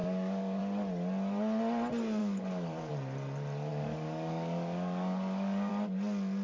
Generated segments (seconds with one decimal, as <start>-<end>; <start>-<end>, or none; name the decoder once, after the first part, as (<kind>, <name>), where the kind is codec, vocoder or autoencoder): 0.0-0.6 (codec, DAC); 2.2-2.9; 3.7-5.7